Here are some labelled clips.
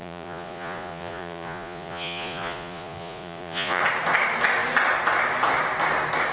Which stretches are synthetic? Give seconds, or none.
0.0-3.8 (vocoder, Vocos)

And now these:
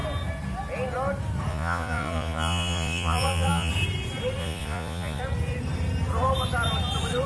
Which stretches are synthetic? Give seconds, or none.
1.5-3.7 (vocoder, Vocos); 4.4-5.2